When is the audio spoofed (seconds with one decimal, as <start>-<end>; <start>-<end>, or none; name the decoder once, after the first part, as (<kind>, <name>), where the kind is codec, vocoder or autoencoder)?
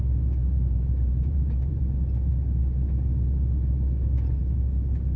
0.4-1.8 (vocoder, BigVGAN v2)